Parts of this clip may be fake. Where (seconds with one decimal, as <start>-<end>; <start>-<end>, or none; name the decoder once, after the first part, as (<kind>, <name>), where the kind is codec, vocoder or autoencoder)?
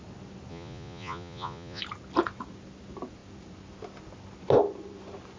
0.5-1.8 (vocoder, Vocos)